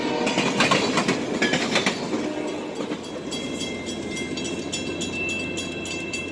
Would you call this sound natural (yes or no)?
yes